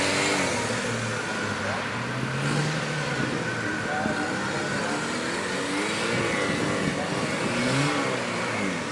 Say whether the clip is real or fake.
real